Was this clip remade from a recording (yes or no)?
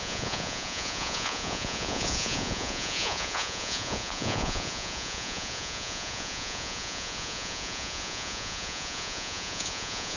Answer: yes